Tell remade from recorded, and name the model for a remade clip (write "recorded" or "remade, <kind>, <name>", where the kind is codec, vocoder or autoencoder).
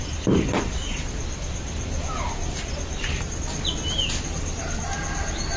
recorded